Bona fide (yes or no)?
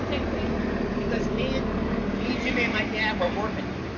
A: yes